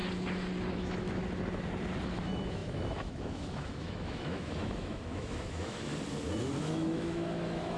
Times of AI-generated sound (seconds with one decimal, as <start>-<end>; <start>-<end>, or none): 0.7-1.2; 2.1-5.9; 6.6-7.8